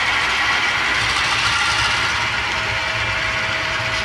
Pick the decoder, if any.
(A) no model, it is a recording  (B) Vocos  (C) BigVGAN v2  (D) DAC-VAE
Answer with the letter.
A